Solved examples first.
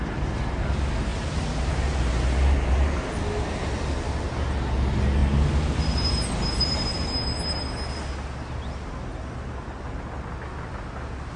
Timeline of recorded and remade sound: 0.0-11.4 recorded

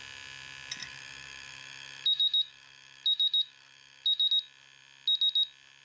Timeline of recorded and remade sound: 0.0-0.8 recorded; 0.8-4.3 remade; 4.3-5.8 recorded